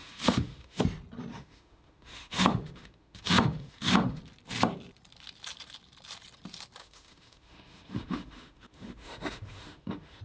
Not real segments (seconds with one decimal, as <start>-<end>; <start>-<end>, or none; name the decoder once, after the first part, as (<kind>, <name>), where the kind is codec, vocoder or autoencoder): 0.0-0.8 (autoencoder, DAC-VAE); 1.3-4.2; 6.8-10.2